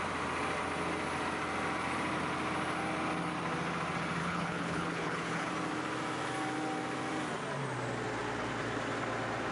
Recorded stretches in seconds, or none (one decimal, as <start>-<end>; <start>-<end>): 0.0-4.2; 5.5-9.5